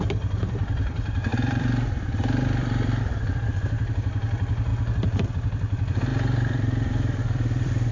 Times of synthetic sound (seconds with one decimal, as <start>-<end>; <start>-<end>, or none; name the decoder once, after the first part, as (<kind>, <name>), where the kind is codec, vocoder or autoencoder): 0.0-7.9 (vocoder, BigVGAN v2)